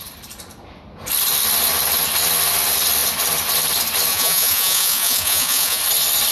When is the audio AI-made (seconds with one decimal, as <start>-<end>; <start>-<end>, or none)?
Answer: 4.1-5.8